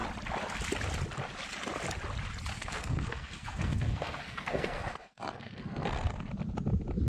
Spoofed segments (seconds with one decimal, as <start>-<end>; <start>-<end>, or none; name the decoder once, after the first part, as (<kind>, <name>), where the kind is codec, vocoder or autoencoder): 2.5-6.3 (codec, SNAC)